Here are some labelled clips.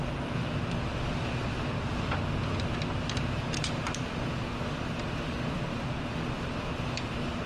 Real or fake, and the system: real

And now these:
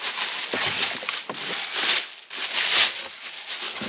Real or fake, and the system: real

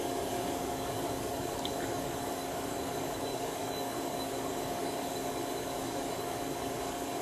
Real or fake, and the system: fake, codec, DAC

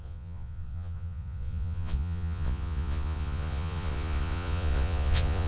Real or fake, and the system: fake, vocoder, Vocos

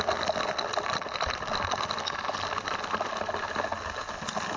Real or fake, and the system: real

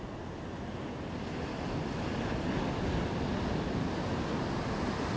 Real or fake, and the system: real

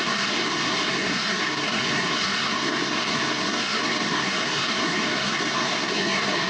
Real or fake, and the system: fake, codec, SNAC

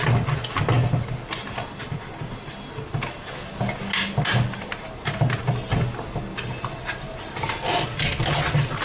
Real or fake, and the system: real